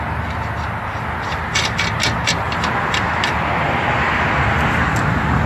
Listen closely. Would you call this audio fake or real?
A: real